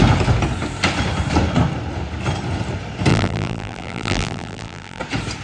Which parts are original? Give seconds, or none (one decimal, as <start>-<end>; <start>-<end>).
0.0-3.1; 5.0-5.4